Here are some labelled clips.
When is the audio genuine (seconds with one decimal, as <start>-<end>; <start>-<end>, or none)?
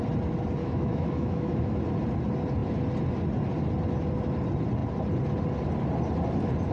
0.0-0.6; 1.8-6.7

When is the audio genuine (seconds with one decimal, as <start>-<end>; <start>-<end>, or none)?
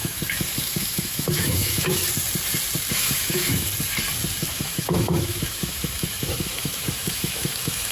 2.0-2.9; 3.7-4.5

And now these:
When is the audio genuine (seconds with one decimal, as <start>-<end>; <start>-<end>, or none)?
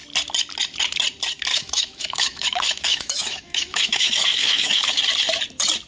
0.0-1.5; 5.0-5.9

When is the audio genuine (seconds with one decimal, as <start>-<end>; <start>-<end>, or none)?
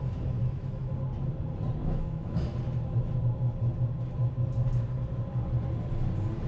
0.0-0.4; 0.9-1.8; 2.5-6.5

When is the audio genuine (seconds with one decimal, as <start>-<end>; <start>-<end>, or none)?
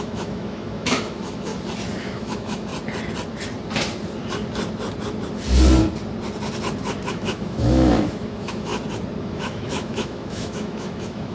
1.5-2.0; 2.7-7.1; 8.7-9.2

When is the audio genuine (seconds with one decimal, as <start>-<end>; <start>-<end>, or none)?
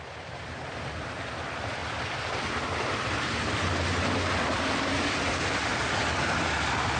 0.0-7.0